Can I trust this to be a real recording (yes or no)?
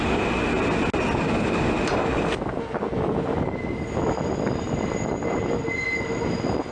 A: yes